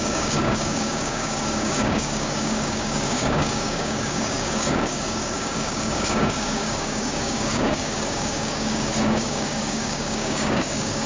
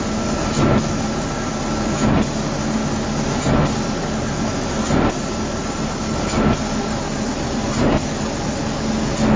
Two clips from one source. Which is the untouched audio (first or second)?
second